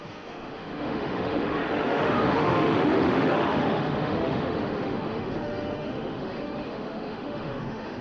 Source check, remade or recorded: remade